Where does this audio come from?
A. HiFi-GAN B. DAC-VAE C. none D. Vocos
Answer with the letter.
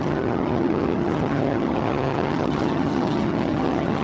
A